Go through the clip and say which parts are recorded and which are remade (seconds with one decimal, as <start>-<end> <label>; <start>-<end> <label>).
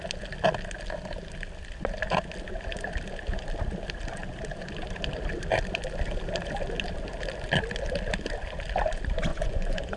0.0-9.3 recorded; 9.3-10.0 remade